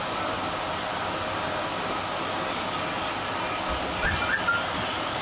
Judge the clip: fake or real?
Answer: real